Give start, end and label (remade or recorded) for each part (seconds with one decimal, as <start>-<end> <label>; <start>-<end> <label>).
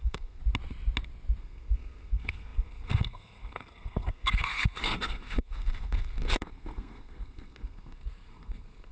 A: 0.0-0.4 remade; 0.4-1.4 recorded; 1.4-8.9 remade